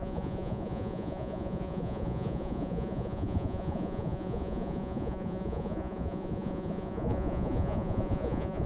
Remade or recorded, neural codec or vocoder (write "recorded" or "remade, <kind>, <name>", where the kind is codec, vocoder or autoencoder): remade, vocoder, Vocos